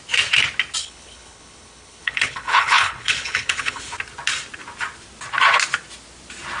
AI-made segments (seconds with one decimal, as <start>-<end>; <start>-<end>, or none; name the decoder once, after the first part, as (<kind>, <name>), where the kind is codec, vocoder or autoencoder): 0.8-3.8 (codec, HILCodec)